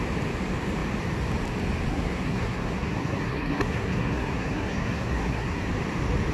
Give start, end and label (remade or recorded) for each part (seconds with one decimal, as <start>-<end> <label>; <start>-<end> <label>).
0.0-1.9 recorded; 1.9-5.7 remade; 5.7-6.3 recorded